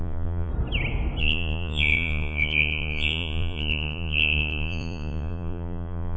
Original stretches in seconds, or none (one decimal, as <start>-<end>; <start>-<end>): 0.5-1.2

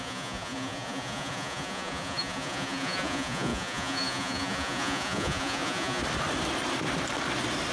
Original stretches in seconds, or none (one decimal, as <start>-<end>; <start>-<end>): 6.0-7.7